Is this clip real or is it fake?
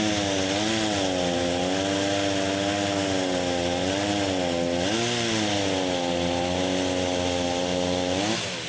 real